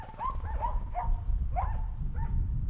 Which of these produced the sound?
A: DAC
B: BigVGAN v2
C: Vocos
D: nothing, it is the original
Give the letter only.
D